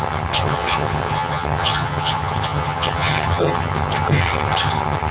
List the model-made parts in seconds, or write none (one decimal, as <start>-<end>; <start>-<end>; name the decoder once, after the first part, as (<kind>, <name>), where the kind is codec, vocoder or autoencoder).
0.0-5.1 (vocoder, HiFi-GAN)